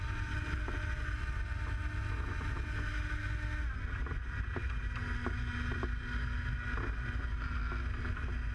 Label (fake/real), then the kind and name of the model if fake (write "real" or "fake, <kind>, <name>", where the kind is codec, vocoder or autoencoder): real